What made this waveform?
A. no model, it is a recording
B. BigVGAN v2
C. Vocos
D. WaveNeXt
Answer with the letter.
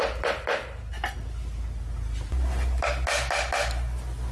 A